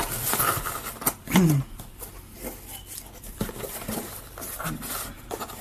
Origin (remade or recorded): recorded